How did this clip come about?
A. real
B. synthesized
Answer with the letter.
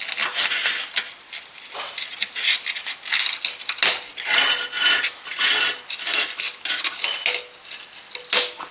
A